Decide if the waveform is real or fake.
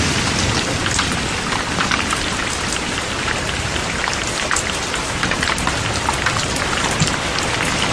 real